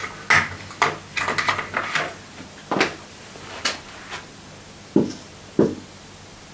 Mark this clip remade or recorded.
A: recorded